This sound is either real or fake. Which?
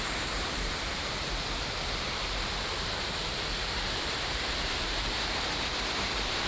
fake